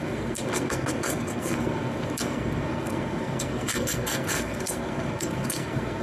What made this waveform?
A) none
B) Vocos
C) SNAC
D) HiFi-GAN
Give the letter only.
C